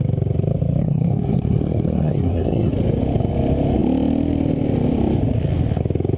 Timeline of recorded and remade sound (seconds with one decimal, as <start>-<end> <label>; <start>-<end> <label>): 0.0-0.8 recorded; 0.8-2.7 remade; 2.7-6.2 recorded